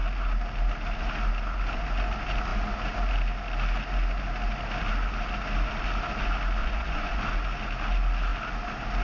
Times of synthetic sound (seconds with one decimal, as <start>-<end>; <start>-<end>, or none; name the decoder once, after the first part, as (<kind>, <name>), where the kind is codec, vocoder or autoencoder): 6.6-7.2 (vocoder, Vocos)